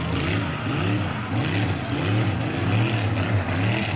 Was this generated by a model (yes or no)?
no